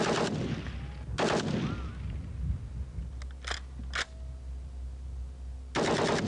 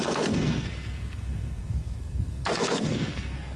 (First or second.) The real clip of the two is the first